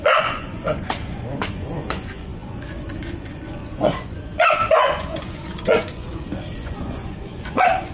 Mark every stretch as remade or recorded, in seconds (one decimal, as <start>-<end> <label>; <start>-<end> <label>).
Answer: 0.0-7.9 remade